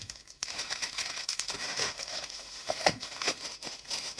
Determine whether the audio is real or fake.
fake